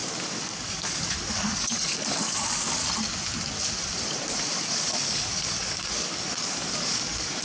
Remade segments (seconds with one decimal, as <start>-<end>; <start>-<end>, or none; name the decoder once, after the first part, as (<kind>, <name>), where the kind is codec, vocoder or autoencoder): 0.0-2.8 (codec, DAC); 4.5-7.4